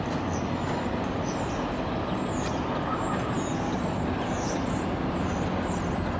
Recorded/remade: recorded